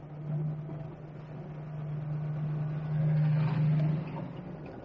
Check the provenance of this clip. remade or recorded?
recorded